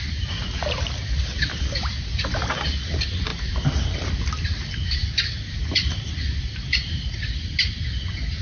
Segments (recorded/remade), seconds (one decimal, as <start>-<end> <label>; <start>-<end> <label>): 0.0-8.4 recorded